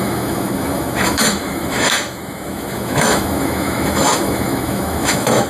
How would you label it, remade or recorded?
remade